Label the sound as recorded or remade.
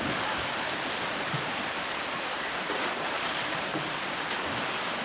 recorded